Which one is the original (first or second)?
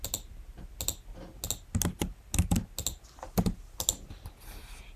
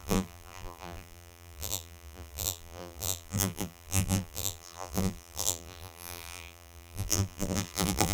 first